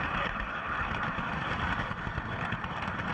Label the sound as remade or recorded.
recorded